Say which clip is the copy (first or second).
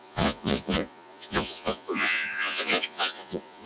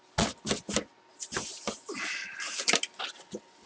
first